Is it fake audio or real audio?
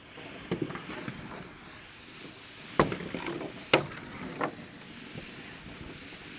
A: real